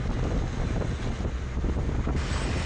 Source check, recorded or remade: recorded